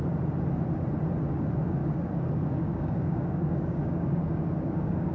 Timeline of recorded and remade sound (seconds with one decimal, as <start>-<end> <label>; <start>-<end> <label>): 0.0-1.8 recorded; 1.8-5.1 remade